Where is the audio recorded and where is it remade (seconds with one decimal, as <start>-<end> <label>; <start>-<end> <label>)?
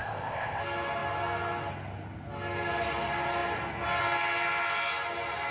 0.0-0.6 remade; 0.6-5.5 recorded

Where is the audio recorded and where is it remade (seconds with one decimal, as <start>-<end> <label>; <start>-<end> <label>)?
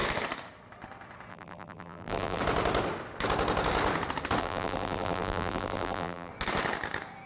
0.0-1.3 recorded; 1.3-2.4 remade; 2.4-4.4 recorded; 4.4-6.3 remade; 6.3-7.3 recorded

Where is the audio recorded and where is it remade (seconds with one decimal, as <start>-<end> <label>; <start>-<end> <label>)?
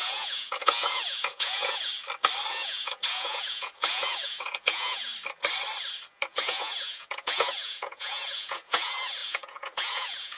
0.0-1.9 remade; 1.9-2.5 recorded; 2.5-5.1 remade; 5.1-6.1 recorded; 6.1-10.4 remade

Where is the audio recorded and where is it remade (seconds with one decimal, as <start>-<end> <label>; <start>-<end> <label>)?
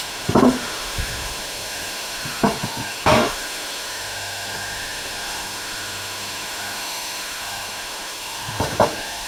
0.0-9.3 remade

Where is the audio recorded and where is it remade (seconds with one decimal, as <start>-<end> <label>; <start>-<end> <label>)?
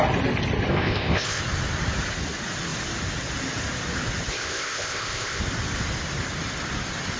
0.0-0.7 recorded; 0.7-1.4 remade; 1.4-4.3 recorded; 4.3-5.4 remade; 5.4-7.2 recorded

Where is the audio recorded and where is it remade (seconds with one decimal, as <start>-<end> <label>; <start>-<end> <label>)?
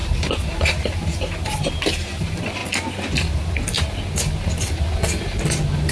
0.0-2.6 remade; 2.6-5.9 recorded